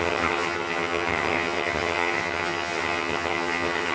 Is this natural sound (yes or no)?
no